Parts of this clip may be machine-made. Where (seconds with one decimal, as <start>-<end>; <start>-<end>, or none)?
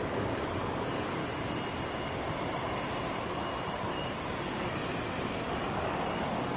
0.0-1.2; 3.7-4.8; 5.4-6.6